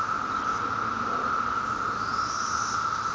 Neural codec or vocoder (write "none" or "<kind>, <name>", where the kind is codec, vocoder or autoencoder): none